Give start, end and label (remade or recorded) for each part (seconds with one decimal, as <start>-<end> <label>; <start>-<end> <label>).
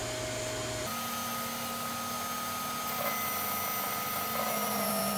0.0-0.8 recorded; 0.8-1.3 remade; 1.3-4.4 recorded; 4.4-5.2 remade